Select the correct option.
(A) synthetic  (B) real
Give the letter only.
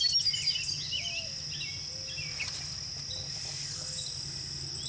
B